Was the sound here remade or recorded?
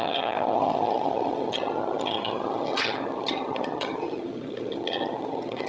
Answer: remade